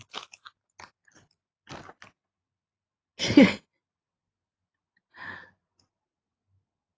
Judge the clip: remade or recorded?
recorded